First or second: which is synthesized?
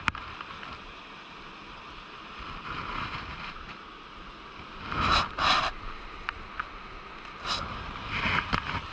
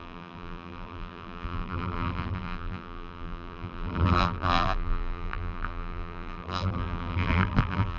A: second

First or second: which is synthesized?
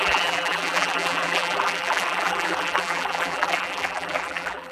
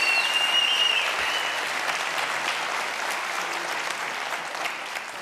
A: first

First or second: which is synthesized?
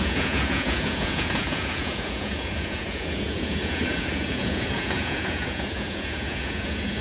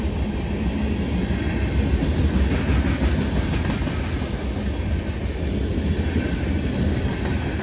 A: first